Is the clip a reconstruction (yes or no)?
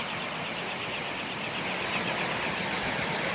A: no